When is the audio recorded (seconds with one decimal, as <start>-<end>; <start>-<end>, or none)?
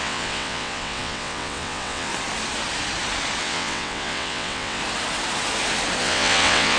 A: 2.1-3.4; 4.8-6.0